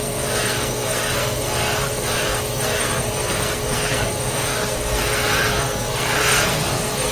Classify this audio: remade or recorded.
remade